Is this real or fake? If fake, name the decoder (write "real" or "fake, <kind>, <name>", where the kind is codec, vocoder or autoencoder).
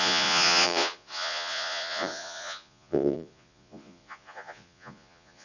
fake, vocoder, Vocos